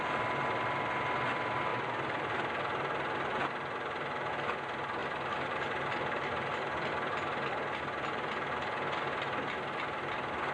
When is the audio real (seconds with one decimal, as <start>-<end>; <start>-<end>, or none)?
0.0-1.7; 4.3-5.0; 8.3-10.5

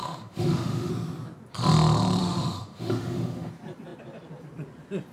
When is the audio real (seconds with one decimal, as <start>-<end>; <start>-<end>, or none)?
0.9-2.2; 3.5-5.1

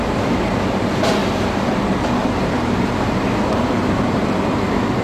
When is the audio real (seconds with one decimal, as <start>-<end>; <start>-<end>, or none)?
0.0-1.2; 4.2-5.0